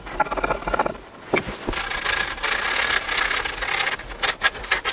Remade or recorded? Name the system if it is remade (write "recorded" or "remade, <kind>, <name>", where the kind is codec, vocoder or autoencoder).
recorded